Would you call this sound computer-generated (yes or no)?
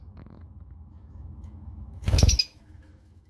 yes